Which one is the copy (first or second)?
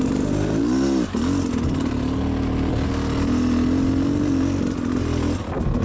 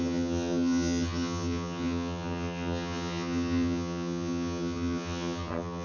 second